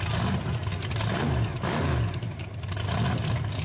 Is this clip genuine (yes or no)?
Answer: yes